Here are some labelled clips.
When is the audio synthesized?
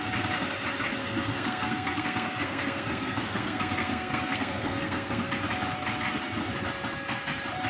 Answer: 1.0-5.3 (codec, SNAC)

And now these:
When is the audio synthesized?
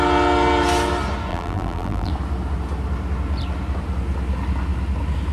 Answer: 1.3-2.1 (vocoder, BigVGAN v2)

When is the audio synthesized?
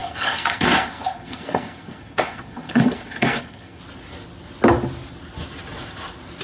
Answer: 0.0-3.8 (codec, SNAC)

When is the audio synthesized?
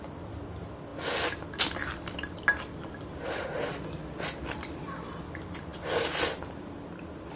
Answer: none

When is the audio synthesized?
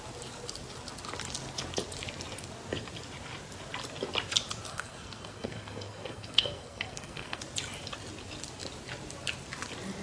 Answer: 4.7-7.4 (codec, SNAC)